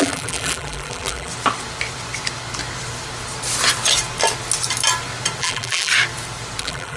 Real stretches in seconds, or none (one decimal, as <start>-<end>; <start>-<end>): 1.3-5.4; 5.9-6.6